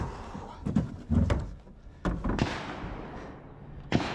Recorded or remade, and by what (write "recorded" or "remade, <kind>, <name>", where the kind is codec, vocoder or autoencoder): recorded